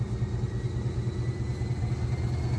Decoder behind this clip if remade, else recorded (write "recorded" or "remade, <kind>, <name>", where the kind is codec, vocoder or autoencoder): recorded